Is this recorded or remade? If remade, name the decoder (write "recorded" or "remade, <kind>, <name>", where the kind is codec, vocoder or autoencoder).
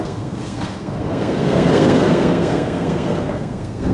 remade, codec, SNAC